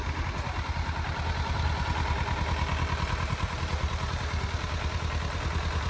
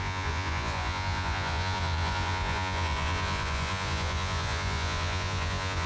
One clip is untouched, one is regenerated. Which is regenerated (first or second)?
second